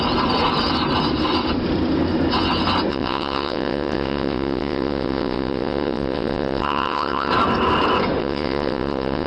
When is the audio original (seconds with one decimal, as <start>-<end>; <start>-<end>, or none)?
0.0-2.9; 7.3-8.2